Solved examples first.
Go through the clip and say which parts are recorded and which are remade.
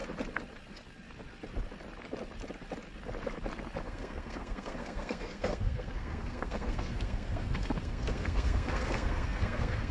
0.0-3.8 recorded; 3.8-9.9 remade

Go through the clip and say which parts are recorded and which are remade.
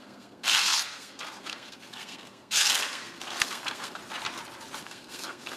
0.0-4.0 remade; 4.0-4.8 recorded; 4.8-5.6 remade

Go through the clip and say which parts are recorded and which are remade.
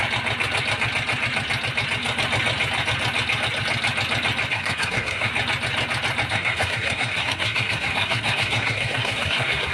0.0-4.5 recorded; 4.5-5.3 remade; 5.3-6.3 recorded; 6.3-9.7 remade